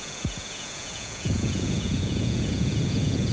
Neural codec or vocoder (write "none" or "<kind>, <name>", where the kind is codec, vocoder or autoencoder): vocoder, Vocos